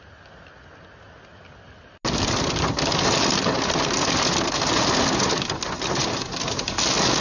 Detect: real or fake real